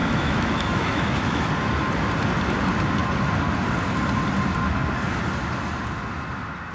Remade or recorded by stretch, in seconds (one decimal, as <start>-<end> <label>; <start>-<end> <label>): 0.0-1.5 remade; 1.5-6.7 recorded